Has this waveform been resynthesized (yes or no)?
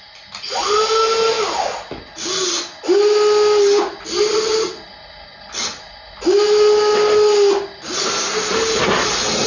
no